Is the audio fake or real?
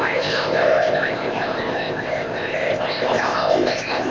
fake